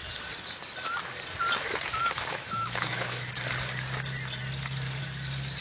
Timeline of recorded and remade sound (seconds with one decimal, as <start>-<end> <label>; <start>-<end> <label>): 0.0-2.0 recorded; 2.0-3.3 remade; 3.3-5.6 recorded